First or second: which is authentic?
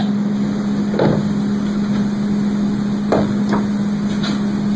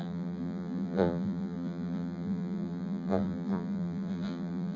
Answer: first